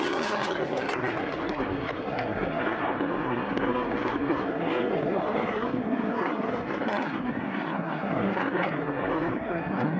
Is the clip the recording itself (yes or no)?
no